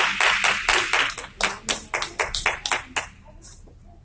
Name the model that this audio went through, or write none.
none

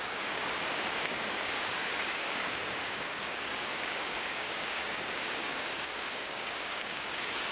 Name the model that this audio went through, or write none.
codec, DAC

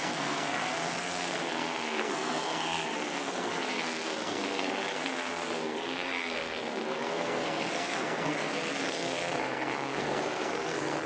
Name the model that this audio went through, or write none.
codec, SNAC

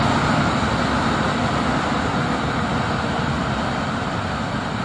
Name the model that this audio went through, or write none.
none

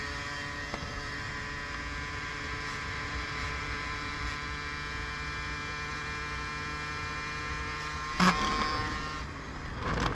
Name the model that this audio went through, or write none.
none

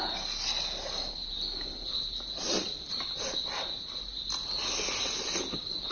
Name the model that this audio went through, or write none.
none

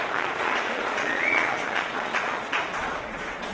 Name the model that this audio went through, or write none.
vocoder, Vocos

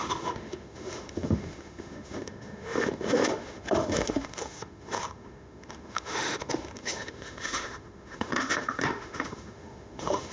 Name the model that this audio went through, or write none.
autoencoder, DAC-VAE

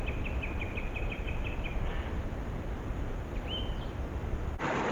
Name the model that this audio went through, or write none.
none